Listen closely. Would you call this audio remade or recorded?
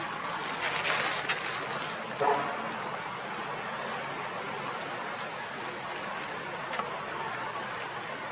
recorded